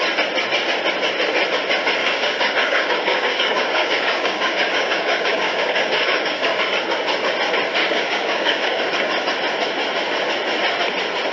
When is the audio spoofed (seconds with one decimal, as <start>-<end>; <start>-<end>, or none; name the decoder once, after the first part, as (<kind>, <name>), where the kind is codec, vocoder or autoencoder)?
2.0-6.6 (codec, DAC); 7.8-8.8